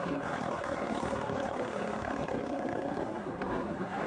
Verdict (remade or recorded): remade